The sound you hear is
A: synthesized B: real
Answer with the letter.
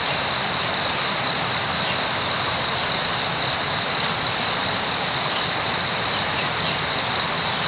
B